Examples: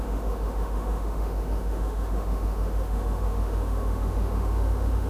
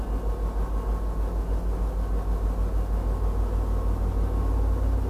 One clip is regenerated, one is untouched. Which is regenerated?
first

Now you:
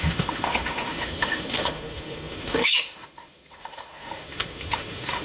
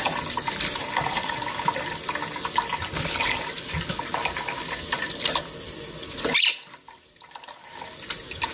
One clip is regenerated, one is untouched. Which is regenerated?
first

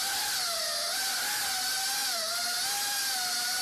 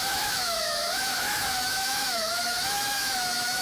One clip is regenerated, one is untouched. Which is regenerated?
second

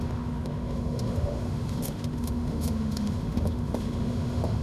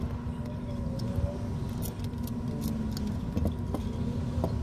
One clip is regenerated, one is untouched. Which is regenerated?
first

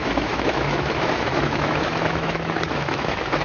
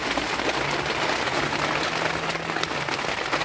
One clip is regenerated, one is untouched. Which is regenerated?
first